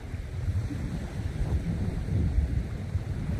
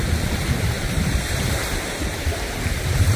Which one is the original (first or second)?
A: first